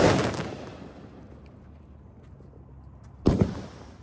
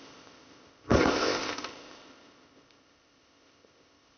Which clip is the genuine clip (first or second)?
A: first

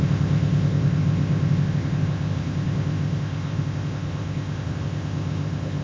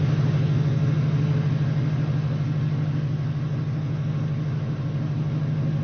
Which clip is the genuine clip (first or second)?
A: second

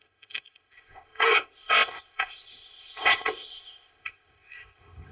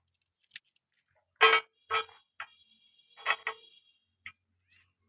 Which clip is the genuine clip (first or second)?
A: second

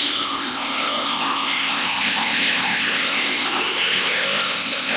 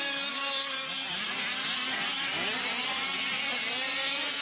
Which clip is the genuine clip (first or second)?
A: second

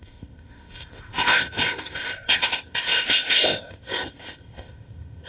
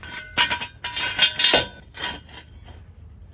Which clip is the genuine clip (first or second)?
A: second